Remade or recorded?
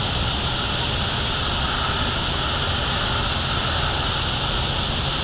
recorded